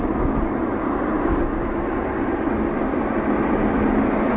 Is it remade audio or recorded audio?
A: recorded